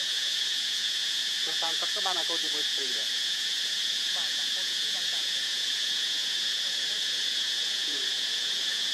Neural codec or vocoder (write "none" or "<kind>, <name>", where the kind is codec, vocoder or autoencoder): vocoder, Vocos